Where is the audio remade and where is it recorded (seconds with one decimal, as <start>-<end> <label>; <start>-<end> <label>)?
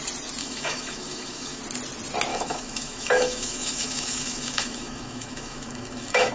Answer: 0.0-0.4 recorded; 0.4-1.6 remade; 1.6-2.3 recorded; 2.3-6.3 remade